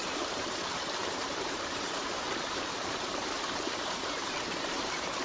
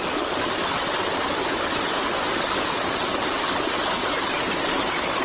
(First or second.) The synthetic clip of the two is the first